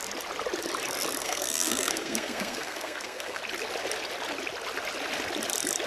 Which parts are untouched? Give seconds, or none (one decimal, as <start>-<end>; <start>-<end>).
0.0-1.2; 3.4-5.9